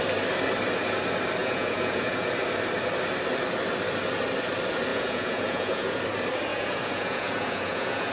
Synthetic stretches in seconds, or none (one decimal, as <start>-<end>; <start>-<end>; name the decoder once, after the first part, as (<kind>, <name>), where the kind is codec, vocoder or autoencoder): 1.4-2.3 (vocoder, Vocos); 4.9-6.0; 6.5-8.1